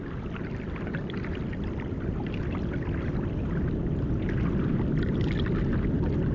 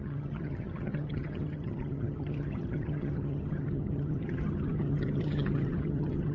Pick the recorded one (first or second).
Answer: first